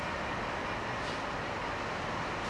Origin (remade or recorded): recorded